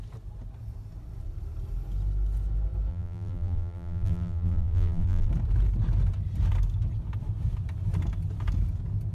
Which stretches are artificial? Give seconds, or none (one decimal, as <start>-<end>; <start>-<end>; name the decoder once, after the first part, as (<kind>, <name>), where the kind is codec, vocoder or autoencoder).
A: 2.9-5.3 (vocoder, BigVGAN v2)